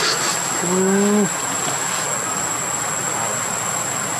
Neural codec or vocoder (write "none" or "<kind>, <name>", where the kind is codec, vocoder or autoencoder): none